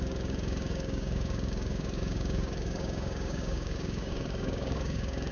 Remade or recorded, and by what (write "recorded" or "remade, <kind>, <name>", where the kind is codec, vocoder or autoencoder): remade, codec, DAC